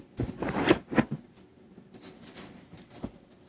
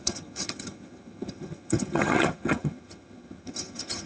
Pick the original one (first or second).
first